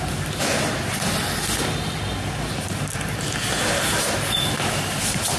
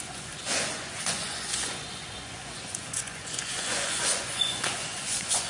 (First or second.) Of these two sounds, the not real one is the second